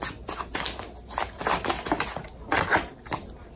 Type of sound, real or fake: real